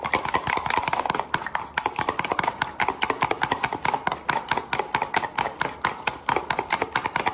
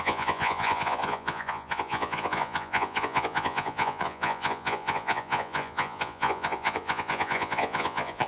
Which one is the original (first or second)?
first